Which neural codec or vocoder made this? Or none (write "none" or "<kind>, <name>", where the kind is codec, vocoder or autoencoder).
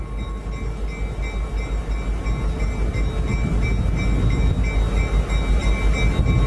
none